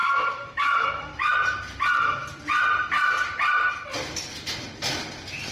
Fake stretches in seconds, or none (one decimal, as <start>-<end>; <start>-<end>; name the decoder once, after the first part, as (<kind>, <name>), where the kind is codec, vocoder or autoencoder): 0.0-1.3 (autoencoder, DAC-VAE)